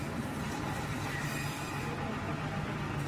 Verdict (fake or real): real